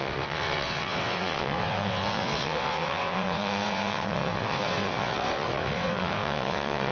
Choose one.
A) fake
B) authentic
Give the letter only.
A